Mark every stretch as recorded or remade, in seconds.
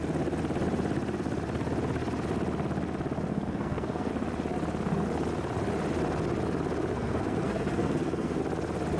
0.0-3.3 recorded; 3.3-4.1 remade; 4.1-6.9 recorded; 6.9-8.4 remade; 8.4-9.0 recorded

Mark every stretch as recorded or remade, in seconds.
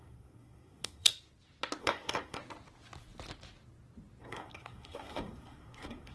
0.0-1.1 remade; 1.1-1.8 recorded; 1.8-2.4 remade; 2.4-4.2 recorded; 4.2-6.1 remade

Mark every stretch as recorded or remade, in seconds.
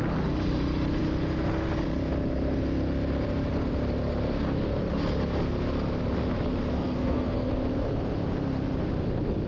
0.0-6.7 recorded; 6.7-7.5 remade; 7.5-9.5 recorded